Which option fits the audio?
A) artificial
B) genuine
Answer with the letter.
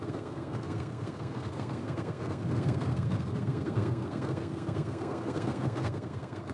A